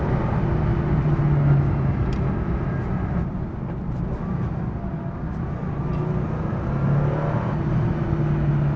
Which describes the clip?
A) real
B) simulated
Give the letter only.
A